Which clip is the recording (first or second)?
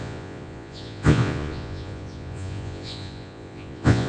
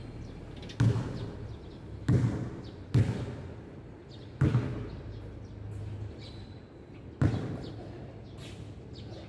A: second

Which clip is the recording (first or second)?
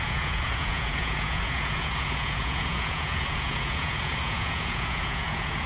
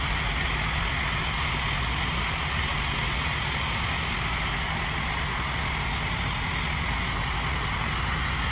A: second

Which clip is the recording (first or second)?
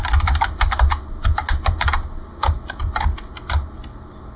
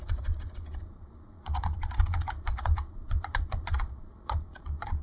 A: first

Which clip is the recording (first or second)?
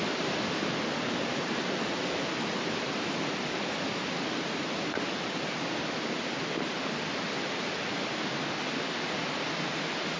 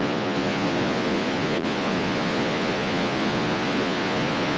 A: first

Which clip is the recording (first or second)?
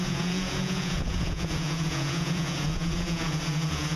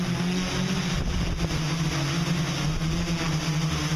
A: second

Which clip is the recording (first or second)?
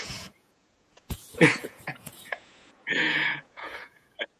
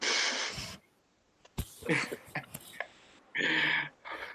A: second